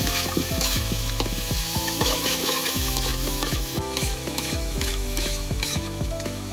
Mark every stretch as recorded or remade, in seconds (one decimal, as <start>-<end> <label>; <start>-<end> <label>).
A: 0.0-6.5 remade